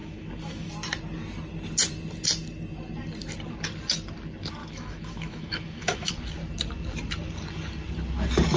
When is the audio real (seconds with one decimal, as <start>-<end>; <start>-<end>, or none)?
0.7-4.6; 6.1-8.6